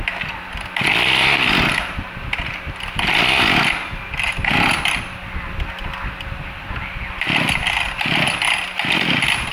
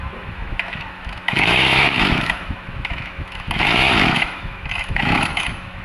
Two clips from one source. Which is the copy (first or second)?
second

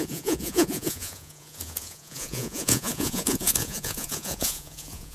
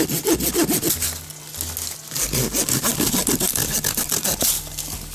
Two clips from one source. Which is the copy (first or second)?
first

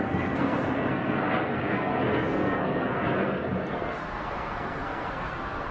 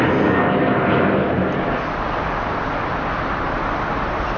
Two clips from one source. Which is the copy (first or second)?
first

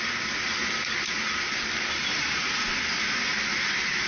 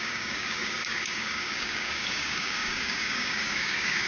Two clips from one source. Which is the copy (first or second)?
second